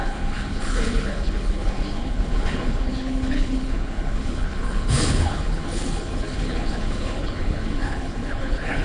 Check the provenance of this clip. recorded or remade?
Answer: remade